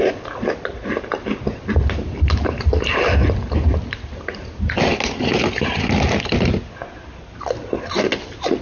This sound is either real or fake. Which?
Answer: real